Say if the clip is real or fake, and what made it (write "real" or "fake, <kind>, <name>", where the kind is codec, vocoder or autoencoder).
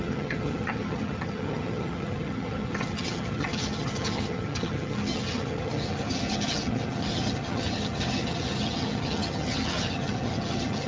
fake, vocoder, HiFi-GAN